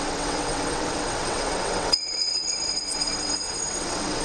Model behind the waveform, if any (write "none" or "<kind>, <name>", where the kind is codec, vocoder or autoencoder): vocoder, WaveNeXt